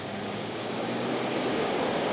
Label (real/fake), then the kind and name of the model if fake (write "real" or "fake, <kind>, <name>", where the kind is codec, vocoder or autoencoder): fake, codec, DAC